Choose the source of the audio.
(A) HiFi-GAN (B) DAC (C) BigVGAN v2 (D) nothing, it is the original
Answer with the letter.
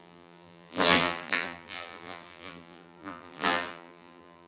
C